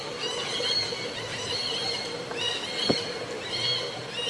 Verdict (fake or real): real